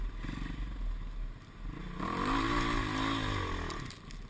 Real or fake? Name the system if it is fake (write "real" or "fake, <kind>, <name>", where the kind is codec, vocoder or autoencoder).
real